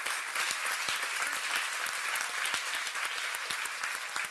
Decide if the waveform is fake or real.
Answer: real